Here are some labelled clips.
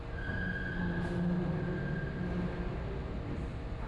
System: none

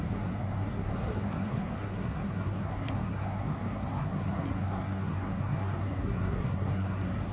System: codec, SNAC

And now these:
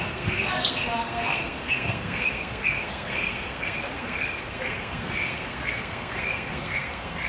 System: codec, SNAC